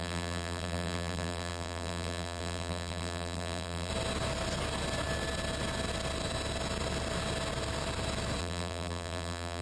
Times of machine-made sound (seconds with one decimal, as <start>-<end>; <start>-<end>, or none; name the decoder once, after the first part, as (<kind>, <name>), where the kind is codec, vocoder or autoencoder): 0.0-3.9 (vocoder, BigVGAN v2); 8.4-9.6